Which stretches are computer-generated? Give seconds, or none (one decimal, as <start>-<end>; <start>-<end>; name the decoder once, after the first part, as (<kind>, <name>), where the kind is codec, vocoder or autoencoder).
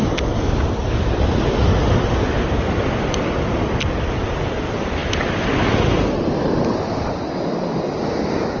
none